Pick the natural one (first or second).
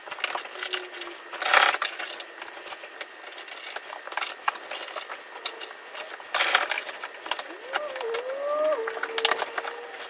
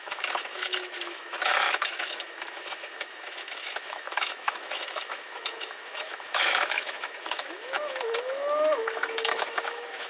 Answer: first